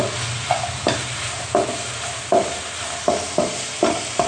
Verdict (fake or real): real